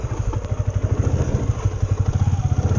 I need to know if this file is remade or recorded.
recorded